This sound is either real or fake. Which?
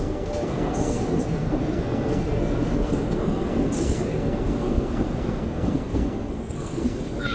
fake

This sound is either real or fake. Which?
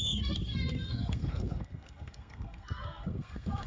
fake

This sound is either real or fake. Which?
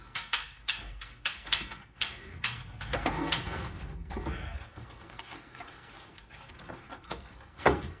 fake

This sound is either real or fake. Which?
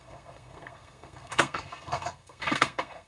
fake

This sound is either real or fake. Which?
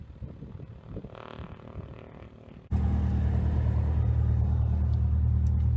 real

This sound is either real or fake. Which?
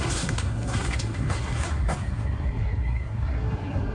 fake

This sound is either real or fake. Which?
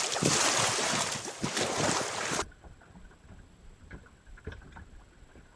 real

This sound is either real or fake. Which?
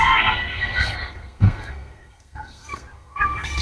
fake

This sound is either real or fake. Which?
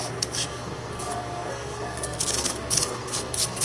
fake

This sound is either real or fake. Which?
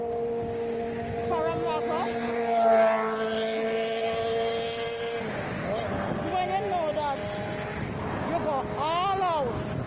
real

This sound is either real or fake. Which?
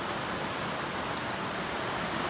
real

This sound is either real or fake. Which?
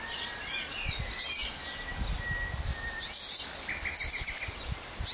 real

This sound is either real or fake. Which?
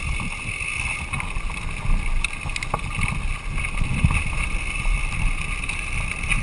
real